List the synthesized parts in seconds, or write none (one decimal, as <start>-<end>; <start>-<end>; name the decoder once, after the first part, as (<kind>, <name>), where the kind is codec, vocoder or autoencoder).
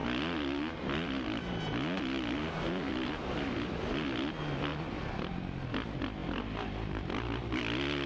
2.9-3.7 (vocoder, BigVGAN v2); 6.2-7.6